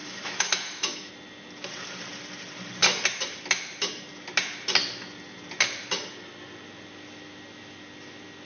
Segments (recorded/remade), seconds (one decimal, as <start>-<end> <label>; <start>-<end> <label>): 0.0-1.1 remade; 1.1-8.5 recorded